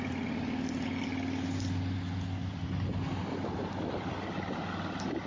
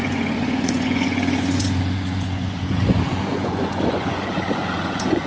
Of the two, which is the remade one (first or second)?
second